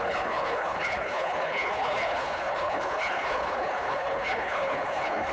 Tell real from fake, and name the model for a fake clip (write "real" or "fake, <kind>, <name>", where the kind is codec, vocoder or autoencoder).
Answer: fake, codec, HILCodec